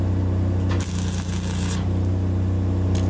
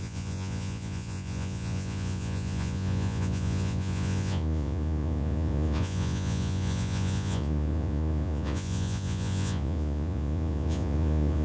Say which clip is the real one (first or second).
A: first